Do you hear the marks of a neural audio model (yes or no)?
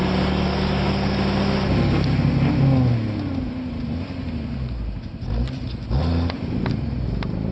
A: no